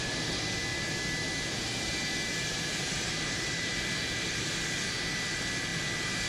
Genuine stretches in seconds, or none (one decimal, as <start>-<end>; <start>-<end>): 0.0-0.7; 4.5-6.3